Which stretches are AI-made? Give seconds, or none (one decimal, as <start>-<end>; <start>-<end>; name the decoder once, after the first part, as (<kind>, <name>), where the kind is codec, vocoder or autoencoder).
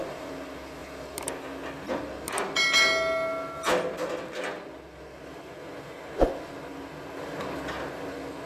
none